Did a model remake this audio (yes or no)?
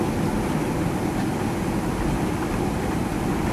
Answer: no